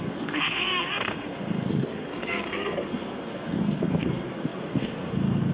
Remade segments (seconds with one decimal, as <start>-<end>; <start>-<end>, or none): 0.0-5.5